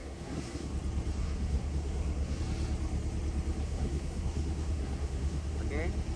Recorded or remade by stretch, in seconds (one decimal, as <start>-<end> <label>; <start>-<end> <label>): 0.0-0.7 remade; 0.7-1.2 recorded; 1.2-2.4 remade; 2.4-3.6 recorded; 3.6-5.6 remade; 5.6-6.2 recorded